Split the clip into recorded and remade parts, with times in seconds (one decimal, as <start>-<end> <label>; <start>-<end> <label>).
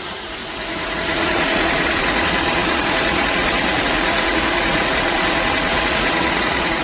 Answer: 0.0-6.8 remade